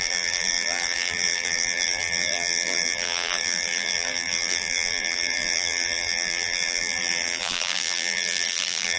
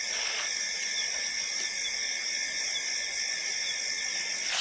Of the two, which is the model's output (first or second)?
first